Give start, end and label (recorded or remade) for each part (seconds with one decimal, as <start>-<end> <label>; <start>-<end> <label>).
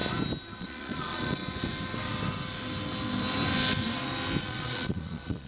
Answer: 0.0-0.6 recorded; 0.6-1.4 remade; 1.4-4.4 recorded; 4.4-5.5 remade